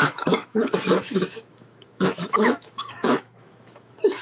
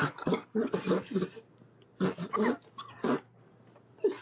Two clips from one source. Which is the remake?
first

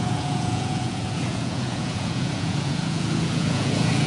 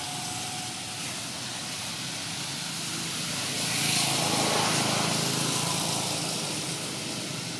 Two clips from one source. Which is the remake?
first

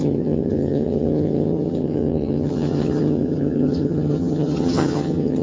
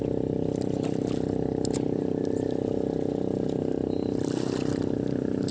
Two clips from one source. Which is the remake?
first